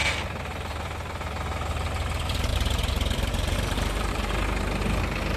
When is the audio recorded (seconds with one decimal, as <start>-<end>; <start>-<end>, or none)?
0.0-2.5; 4.2-5.4